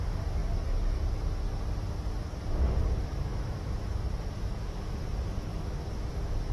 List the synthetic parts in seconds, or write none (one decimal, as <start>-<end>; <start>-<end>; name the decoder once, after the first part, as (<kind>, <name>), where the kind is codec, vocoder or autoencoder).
2.8-4.0 (autoencoder, DAC-VAE); 5.5-6.1